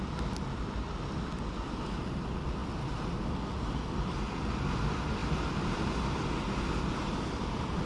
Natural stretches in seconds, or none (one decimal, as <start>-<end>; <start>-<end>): 0.0-7.9